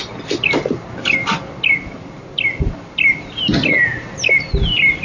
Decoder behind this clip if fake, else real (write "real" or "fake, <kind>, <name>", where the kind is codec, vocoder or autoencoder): real